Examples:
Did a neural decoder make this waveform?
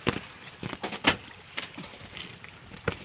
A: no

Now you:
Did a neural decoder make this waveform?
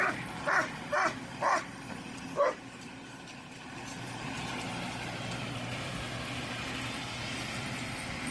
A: yes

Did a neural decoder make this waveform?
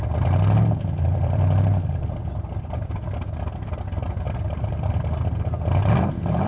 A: yes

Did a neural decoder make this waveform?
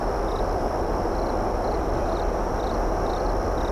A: yes